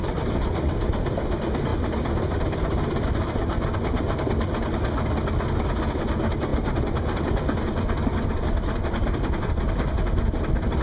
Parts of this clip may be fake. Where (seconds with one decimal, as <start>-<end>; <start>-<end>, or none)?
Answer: 1.7-2.8; 6.5-9.4